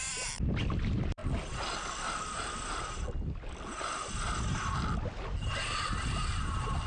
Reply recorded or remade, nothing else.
recorded